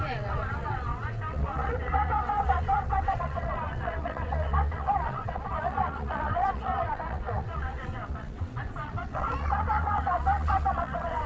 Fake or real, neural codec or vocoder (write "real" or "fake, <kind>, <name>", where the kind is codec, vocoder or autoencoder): fake, vocoder, WaveNeXt